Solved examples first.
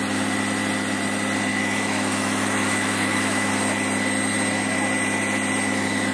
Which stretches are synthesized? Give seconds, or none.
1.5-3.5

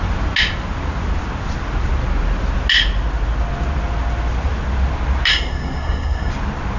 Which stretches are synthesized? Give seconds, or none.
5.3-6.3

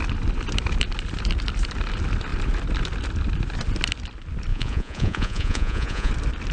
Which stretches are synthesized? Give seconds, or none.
4.5-6.1

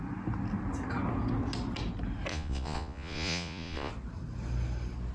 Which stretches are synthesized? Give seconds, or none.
2.3-3.9

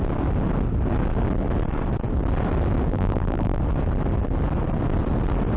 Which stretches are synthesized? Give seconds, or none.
2.9-3.6

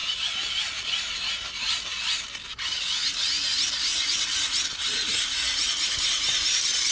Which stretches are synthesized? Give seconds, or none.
3.9-4.4